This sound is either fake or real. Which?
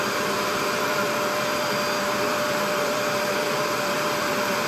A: fake